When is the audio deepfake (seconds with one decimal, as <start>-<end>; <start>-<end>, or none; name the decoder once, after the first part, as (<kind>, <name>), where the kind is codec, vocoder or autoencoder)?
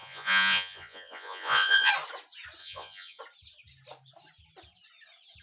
0.0-1.9 (vocoder, Vocos); 2.6-3.2